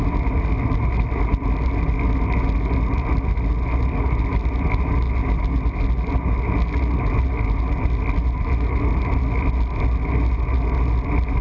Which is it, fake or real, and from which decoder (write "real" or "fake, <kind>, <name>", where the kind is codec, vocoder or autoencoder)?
real